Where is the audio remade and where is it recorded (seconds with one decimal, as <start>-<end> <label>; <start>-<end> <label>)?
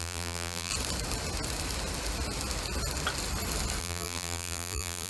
0.0-0.7 remade; 0.7-3.8 recorded; 3.8-5.1 remade